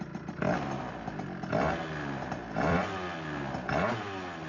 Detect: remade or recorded recorded